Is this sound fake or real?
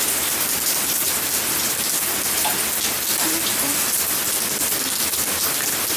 real